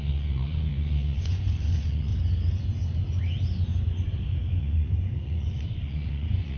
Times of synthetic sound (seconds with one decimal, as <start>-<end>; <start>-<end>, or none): 0.0-2.1; 4.6-6.6